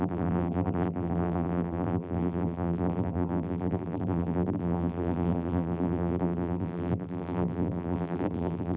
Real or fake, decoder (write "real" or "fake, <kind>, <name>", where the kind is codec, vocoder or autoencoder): fake, vocoder, BigVGAN v2